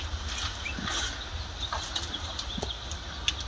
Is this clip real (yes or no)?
yes